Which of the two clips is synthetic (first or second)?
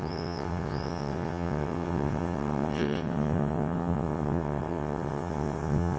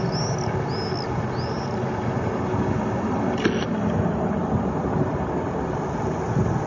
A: first